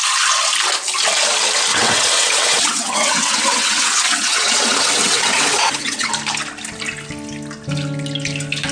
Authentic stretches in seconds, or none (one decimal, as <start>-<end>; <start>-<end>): 0.0-1.7; 6.1-8.7